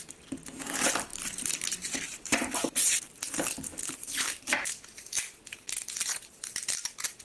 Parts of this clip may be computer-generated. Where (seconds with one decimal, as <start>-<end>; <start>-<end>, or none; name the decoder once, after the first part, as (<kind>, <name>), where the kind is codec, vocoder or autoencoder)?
1.1-3.3 (vocoder, BigVGAN v2); 3.7-4.7